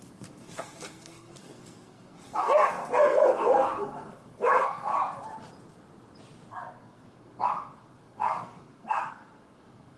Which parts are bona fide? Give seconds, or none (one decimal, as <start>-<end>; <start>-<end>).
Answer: 4.9-6.5